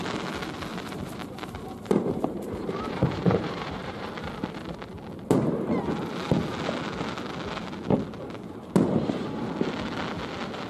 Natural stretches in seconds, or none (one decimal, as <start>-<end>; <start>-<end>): 0.0-0.7; 4.1-10.7